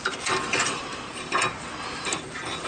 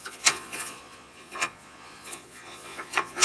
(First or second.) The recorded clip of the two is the first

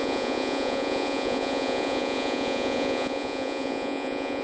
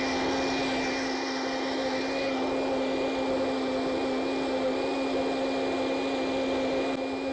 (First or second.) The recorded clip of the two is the second